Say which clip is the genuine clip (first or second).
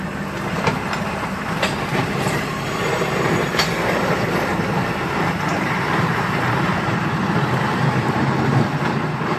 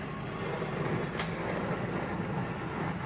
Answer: second